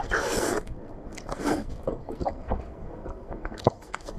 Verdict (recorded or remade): remade